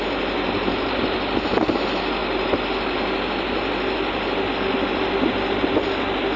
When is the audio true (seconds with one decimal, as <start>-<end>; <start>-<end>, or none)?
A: 0.0-6.4